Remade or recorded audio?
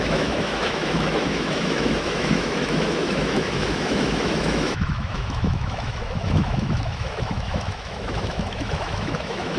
remade